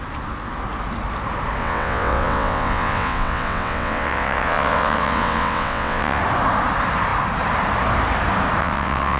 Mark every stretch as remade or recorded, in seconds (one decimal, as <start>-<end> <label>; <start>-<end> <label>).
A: 0.0-1.6 recorded; 1.6-6.2 remade; 6.2-8.6 recorded; 8.6-9.2 remade